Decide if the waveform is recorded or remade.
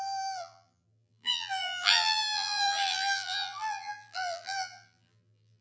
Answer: remade